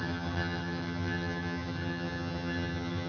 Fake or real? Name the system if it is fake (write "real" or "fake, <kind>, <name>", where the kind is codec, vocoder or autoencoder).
fake, vocoder, HiFi-GAN